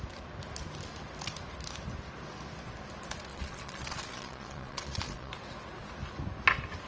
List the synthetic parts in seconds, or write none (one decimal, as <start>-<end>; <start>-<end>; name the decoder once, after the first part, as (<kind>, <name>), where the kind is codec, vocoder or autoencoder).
3.3-5.3 (vocoder, Vocos)

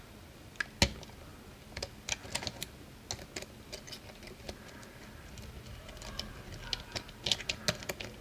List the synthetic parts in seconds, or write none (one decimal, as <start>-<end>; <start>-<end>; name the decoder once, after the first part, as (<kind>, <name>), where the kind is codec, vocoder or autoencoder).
none

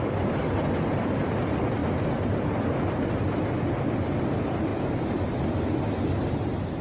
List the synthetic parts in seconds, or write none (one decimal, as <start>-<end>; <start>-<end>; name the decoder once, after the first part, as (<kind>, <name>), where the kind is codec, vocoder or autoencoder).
1.8-3.0 (vocoder, BigVGAN v2)

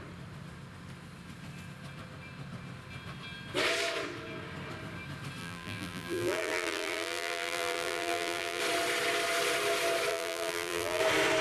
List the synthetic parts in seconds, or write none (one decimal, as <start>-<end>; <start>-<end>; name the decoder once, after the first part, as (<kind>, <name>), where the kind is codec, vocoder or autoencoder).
5.4-8.6 (vocoder, BigVGAN v2); 10.1-11.0

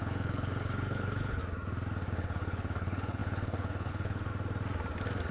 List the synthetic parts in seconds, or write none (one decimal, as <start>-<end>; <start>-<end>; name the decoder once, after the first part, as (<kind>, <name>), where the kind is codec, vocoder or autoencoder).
0.0-1.4 (codec, HILCodec); 2.1-4.3

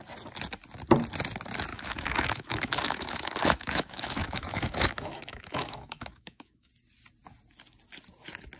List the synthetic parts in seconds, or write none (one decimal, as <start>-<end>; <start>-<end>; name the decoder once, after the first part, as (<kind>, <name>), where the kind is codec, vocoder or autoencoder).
1.7-6.7 (autoencoder, DAC-VAE)

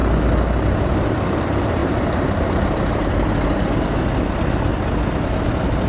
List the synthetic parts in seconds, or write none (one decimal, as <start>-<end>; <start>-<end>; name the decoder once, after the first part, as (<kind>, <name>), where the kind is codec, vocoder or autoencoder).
1.8-4.0 (vocoder, BigVGAN v2)